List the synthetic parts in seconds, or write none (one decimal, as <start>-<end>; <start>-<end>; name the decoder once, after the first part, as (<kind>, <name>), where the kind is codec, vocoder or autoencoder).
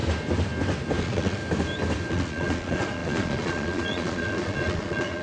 1.0-1.4 (vocoder, Vocos); 2.1-5.2